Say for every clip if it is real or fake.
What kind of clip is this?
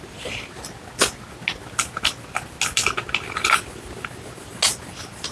real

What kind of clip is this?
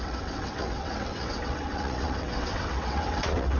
fake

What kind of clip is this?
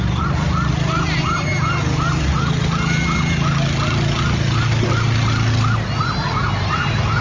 real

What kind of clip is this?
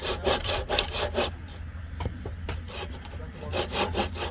real